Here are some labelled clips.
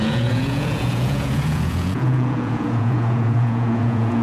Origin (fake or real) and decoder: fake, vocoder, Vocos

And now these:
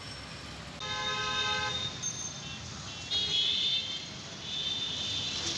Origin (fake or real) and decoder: real